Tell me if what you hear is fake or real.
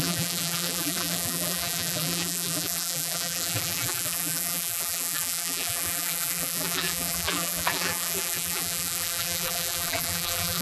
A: fake